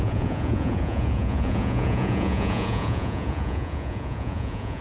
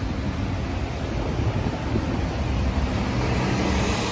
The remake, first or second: first